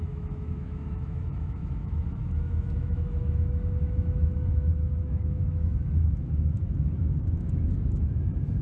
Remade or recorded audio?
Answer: remade